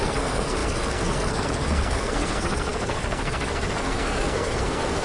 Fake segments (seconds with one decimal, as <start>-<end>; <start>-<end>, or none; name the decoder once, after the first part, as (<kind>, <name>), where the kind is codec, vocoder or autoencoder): 0.0-5.0 (codec, SNAC)